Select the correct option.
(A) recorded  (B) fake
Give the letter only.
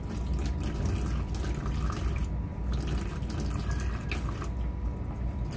A